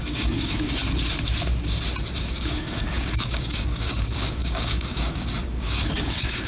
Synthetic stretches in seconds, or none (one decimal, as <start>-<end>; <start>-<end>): 0.0-0.8; 2.2-6.5